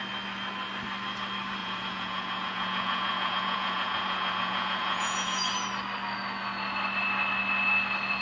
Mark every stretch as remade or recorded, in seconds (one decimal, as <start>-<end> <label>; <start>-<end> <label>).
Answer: 0.0-1.6 recorded; 1.6-5.5 remade; 5.5-8.2 recorded